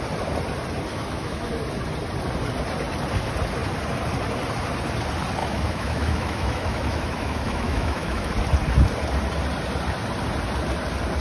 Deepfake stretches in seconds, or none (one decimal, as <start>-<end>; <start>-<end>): 0.9-1.5; 5.4-8.3